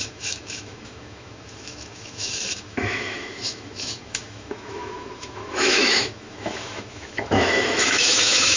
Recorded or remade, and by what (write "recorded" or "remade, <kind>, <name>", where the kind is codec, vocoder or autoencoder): remade, autoencoder, DAC-VAE